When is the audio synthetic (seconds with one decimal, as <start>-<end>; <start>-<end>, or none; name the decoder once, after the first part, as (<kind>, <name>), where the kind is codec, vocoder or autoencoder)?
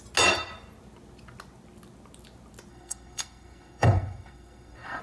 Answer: 2.7-5.0 (codec, SNAC)